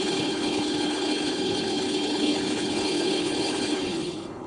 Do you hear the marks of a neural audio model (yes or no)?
yes